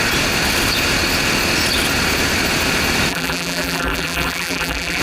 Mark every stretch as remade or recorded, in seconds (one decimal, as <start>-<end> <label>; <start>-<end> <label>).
0.0-3.1 recorded; 3.1-5.0 remade